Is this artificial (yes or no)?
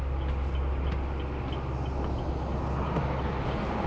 no